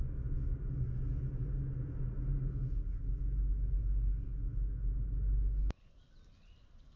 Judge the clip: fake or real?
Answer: real